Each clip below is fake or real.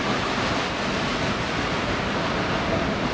real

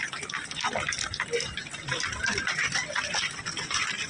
fake